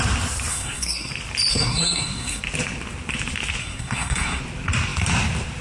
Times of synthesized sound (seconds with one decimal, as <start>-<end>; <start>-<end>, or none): 0.5-1.1; 1.5-2.4; 3.6-4.4